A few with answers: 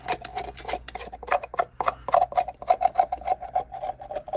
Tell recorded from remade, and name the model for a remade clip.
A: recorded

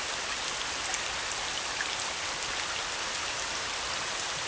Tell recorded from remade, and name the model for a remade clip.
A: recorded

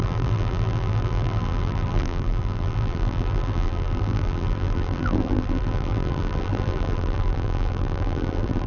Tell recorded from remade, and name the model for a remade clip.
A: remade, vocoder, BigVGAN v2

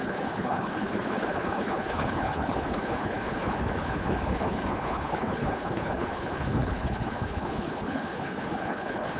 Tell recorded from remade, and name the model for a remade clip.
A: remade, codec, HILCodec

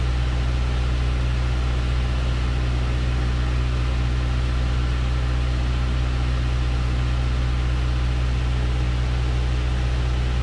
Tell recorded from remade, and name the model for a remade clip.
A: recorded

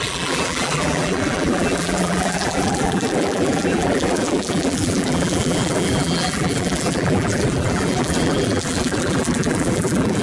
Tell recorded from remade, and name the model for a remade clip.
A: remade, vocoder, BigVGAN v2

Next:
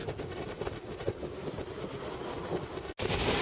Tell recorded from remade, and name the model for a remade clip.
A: recorded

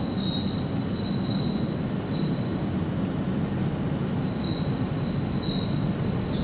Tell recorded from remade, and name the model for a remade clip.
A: recorded